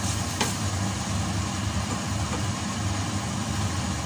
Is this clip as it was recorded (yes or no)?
yes